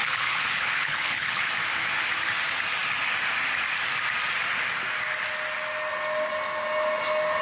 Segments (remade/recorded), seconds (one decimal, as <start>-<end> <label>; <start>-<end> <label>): 0.0-1.5 remade; 1.5-7.4 recorded